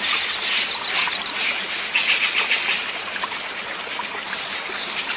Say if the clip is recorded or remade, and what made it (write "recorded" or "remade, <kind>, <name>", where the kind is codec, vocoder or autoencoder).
recorded